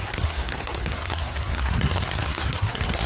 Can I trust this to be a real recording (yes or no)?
no